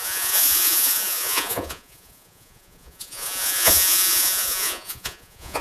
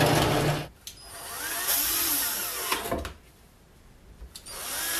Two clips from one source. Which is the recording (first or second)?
second